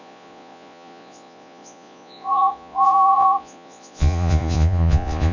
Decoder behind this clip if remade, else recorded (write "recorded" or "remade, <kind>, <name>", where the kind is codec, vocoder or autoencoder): remade, vocoder, Vocos